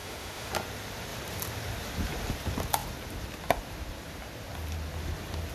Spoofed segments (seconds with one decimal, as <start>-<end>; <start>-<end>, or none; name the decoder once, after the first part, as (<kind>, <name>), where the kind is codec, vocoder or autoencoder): 0.0-0.5 (autoencoder, DAC-VAE)